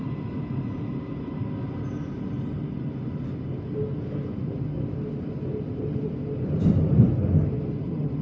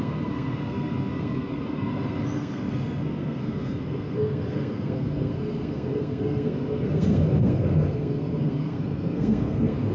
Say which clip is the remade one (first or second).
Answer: second